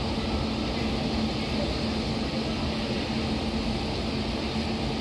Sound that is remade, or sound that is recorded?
recorded